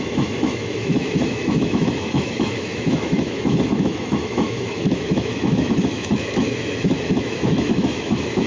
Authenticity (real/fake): fake